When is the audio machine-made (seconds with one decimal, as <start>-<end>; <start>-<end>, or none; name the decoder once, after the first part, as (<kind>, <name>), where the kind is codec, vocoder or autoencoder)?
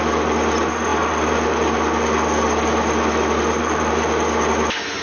none